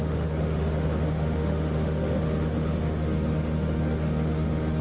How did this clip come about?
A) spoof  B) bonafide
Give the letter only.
A